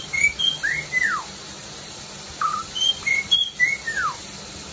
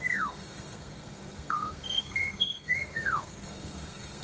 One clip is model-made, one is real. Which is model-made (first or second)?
second